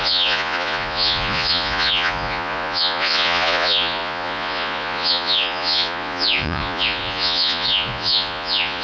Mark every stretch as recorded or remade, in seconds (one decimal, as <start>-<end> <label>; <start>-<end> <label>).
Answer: 0.0-8.8 remade

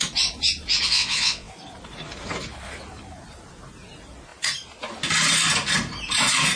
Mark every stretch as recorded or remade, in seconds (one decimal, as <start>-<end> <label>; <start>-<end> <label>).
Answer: 0.0-0.9 recorded; 0.9-1.5 remade; 1.5-6.6 recorded

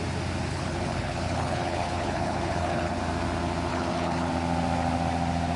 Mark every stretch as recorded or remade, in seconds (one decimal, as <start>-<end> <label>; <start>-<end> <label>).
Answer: 0.0-0.5 recorded; 0.5-3.0 remade; 3.0-3.7 recorded; 3.7-4.3 remade; 4.3-5.6 recorded

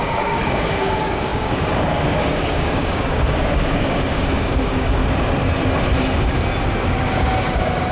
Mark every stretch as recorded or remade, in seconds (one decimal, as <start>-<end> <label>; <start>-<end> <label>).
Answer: 0.0-5.0 remade; 5.0-7.0 recorded; 7.0-7.9 remade

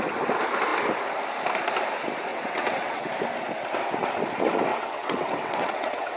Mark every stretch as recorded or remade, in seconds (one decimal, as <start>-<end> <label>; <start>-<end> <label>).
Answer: 0.0-2.3 recorded; 2.3-3.1 remade; 3.1-4.7 recorded; 4.7-6.2 remade

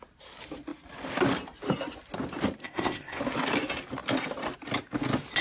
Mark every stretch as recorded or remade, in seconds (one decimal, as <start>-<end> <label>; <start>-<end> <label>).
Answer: 0.0-2.6 recorded; 2.6-3.2 remade; 3.2-5.4 recorded

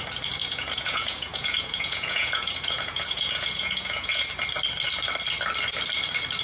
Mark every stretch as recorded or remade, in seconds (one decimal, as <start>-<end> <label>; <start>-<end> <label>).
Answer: 0.0-0.4 recorded; 0.4-4.2 remade; 4.2-6.4 recorded

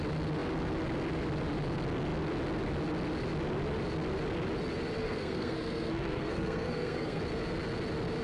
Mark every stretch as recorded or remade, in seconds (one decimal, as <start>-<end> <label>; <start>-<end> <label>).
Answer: 0.0-5.0 recorded; 5.0-7.2 remade; 7.2-8.2 recorded